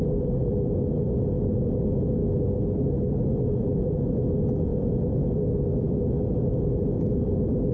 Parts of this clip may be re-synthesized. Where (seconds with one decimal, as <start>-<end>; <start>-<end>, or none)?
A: 2.2-2.9; 4.7-5.9